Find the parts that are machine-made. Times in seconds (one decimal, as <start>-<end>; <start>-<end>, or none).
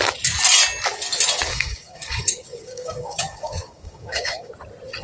1.5-4.5